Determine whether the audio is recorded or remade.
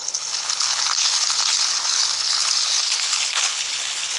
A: remade